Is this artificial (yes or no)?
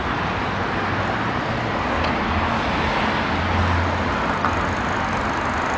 no